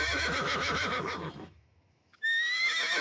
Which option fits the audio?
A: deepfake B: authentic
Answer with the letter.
A